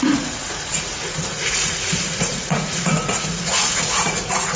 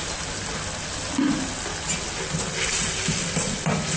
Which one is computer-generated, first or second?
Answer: first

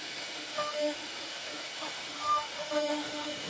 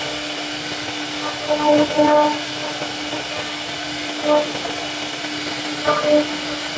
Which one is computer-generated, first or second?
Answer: first